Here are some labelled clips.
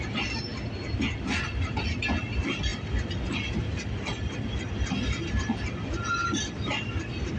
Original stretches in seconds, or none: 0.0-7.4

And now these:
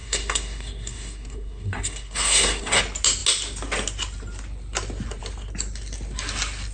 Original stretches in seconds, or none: 2.8-6.7